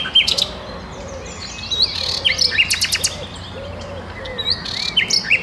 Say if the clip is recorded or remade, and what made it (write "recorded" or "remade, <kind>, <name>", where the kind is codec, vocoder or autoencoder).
recorded